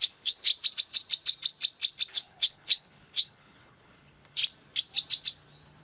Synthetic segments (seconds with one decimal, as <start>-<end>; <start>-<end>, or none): 0.0-0.5; 2.1-4.4